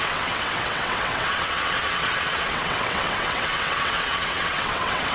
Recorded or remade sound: remade